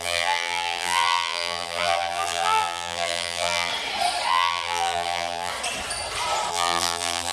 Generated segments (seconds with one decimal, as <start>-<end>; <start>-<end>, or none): 0.0-3.7; 4.3-5.5; 6.5-7.3